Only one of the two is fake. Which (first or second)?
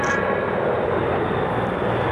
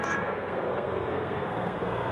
second